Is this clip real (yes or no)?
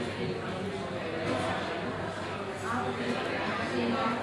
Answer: yes